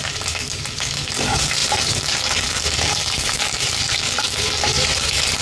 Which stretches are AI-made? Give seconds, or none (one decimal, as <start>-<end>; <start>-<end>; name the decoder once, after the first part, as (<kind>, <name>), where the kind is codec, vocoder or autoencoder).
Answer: 0.0-5.4 (codec, DAC)